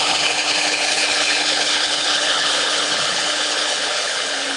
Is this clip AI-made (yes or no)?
yes